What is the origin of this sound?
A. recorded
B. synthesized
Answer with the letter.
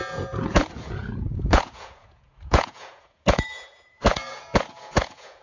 B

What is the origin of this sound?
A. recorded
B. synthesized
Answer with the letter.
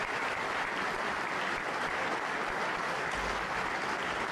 A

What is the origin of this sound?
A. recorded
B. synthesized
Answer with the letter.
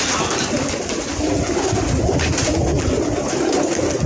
A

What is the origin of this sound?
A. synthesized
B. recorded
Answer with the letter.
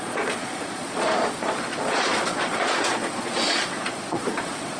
A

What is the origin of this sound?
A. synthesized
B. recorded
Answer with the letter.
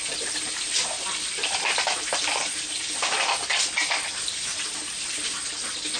B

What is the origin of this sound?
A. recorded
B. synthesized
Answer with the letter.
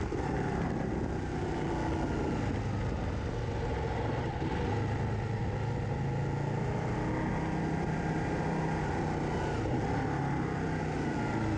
A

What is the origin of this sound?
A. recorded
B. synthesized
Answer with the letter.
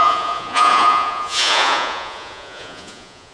B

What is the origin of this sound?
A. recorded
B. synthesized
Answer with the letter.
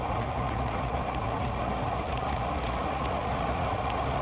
B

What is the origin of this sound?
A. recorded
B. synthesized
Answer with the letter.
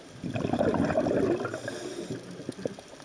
A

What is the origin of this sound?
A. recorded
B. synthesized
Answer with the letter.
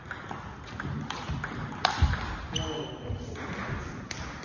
A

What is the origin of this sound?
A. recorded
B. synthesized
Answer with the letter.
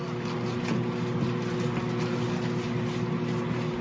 A